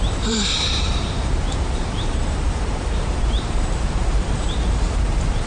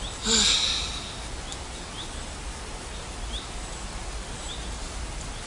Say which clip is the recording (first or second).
second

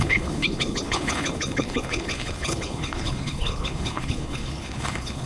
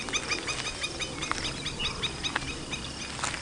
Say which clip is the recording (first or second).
second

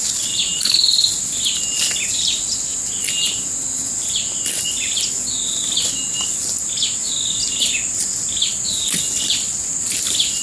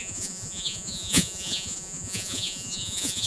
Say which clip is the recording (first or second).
first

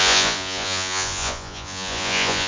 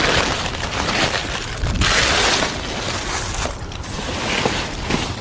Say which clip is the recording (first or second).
second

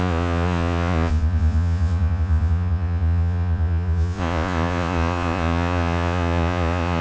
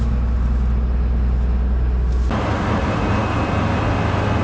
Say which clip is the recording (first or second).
second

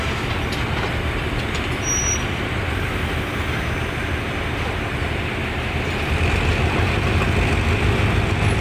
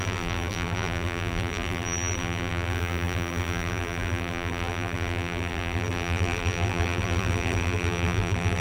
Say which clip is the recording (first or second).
first